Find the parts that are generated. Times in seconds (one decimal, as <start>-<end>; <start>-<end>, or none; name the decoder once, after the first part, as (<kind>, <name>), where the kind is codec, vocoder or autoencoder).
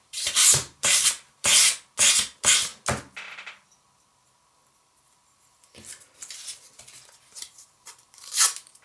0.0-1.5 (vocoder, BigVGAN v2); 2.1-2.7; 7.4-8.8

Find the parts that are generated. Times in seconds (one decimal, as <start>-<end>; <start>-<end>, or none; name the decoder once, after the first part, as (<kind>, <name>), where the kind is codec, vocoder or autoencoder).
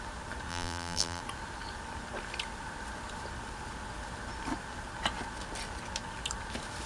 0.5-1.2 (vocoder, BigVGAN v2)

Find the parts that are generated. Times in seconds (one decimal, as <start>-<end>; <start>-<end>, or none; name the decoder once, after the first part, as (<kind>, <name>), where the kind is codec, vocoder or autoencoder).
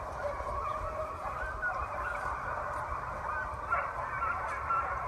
none